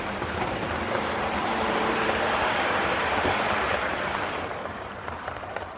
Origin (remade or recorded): remade